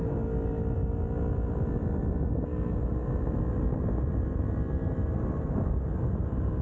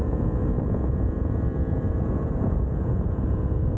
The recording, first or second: first